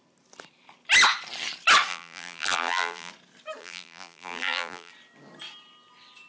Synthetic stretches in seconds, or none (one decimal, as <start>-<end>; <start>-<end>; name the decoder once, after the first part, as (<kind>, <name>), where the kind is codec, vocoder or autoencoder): 1.9-3.1 (vocoder, BigVGAN v2); 3.6-4.9